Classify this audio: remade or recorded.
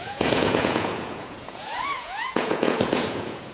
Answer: remade